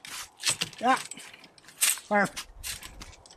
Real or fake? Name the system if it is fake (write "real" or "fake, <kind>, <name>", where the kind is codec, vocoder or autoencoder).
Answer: real